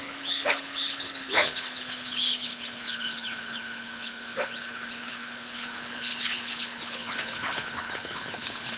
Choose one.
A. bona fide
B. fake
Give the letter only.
B